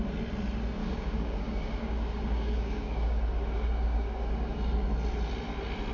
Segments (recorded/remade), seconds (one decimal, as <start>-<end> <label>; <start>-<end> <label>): 0.0-0.8 recorded; 0.8-4.3 remade; 4.3-5.9 recorded